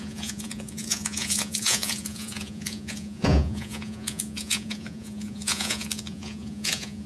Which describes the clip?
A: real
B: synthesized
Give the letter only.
B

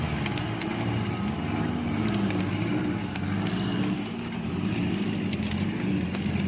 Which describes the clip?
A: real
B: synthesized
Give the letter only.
A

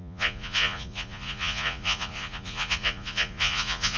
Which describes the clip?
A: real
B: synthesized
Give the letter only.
B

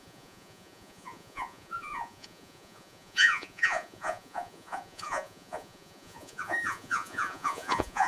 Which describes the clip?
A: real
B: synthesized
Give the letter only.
B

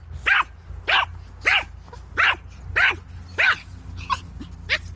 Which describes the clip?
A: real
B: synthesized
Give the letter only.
A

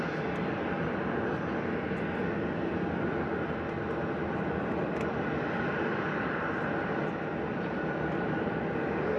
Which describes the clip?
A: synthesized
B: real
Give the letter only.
B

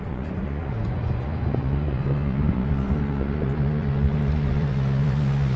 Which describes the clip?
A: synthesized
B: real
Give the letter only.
A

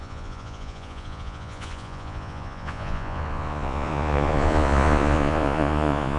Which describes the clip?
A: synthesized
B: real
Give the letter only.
A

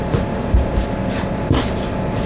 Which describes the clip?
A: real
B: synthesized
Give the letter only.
A